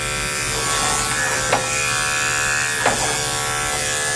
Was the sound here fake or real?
real